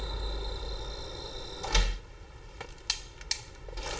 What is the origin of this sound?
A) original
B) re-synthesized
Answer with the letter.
A